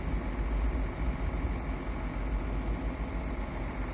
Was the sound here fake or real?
real